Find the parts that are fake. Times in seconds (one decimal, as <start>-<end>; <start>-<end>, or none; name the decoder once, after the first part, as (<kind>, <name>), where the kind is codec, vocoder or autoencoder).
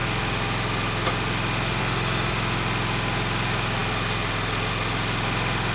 none